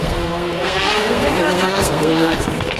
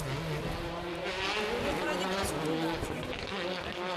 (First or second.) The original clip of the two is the second